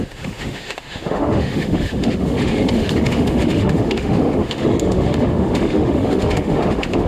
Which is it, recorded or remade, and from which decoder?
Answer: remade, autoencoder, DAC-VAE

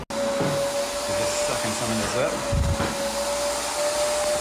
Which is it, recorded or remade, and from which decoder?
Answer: recorded